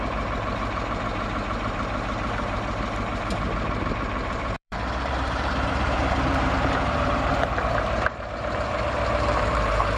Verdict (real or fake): fake